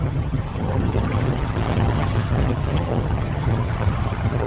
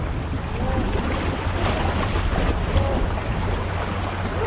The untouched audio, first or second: second